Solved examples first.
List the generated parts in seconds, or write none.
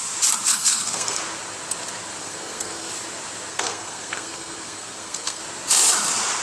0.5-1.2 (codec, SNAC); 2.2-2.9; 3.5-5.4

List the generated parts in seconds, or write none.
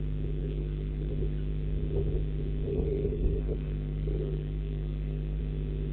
0.4-1.1 (codec, SNAC); 2.7-5.4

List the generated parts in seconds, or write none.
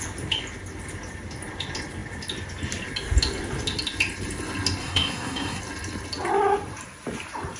4.8-5.6 (codec, SNAC)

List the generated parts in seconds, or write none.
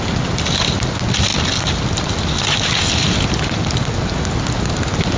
none